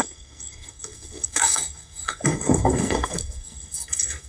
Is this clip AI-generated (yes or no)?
yes